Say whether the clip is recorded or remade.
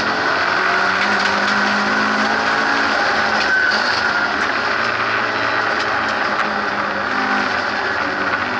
recorded